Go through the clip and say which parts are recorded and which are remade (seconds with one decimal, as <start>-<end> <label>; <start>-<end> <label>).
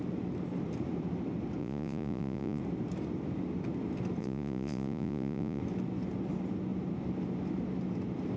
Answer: 0.0-1.6 recorded; 1.6-2.6 remade; 2.6-4.2 recorded; 4.2-5.6 remade; 5.6-8.4 recorded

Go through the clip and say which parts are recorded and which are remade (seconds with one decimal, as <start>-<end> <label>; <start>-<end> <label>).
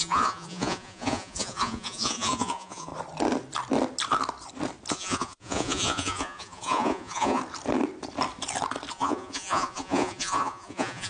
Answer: 0.0-2.9 remade; 2.9-4.9 recorded; 4.9-7.4 remade; 7.4-8.9 recorded; 8.9-11.1 remade